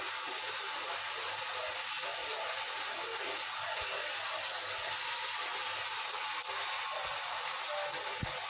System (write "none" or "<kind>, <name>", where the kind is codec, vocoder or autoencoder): none